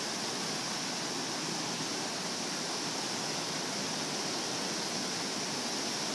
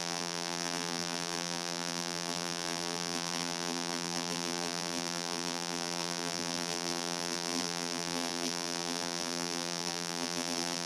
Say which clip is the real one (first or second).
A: first